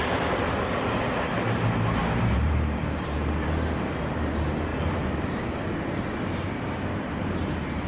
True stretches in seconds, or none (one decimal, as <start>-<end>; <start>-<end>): 0.0-2.0; 4.1-4.7; 5.6-7.9